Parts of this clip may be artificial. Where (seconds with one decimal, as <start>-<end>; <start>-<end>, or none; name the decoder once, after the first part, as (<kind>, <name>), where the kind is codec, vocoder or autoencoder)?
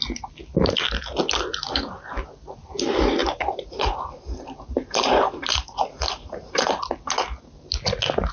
3.2-6.9 (vocoder, BigVGAN v2)